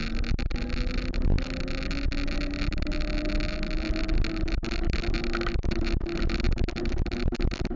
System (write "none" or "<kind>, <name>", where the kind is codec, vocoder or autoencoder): none